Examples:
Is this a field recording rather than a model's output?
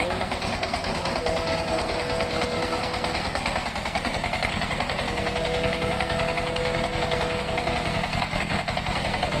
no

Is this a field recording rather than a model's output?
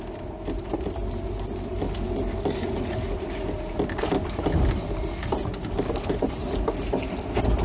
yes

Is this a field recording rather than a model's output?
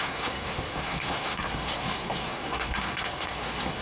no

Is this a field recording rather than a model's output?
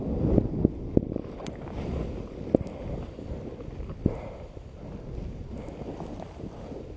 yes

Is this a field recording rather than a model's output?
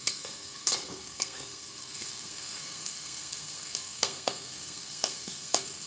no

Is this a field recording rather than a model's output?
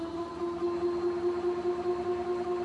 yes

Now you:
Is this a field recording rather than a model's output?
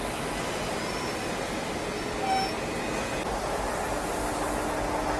yes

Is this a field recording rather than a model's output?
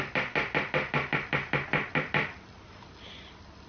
yes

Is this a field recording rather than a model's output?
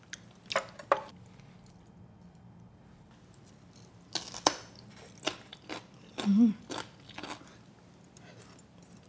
yes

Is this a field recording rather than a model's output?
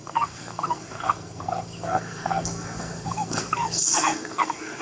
no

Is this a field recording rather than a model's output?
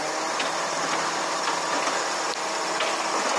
yes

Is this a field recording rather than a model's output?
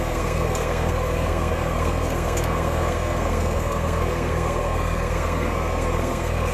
no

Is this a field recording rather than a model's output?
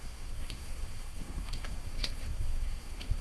no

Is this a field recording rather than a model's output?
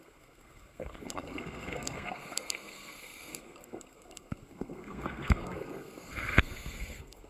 no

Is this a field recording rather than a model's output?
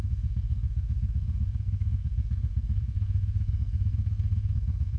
no